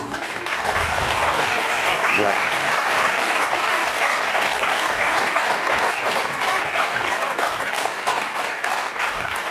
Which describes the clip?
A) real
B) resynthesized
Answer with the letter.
B